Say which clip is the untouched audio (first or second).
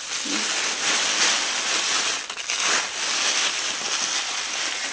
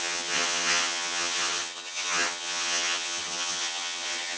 first